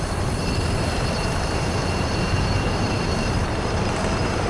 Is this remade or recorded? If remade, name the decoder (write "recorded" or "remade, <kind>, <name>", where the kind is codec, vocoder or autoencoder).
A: remade, vocoder, BigVGAN v2